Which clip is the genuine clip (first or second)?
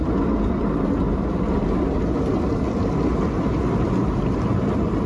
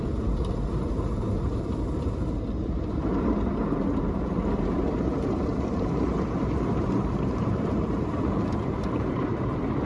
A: first